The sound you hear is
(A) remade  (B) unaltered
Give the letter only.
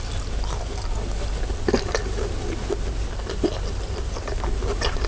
B